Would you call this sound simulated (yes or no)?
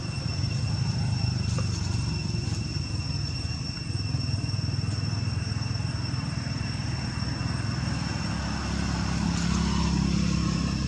no